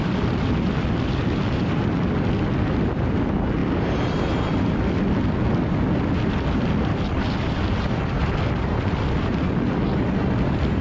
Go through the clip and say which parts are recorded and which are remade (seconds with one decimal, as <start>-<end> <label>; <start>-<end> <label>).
0.0-10.8 recorded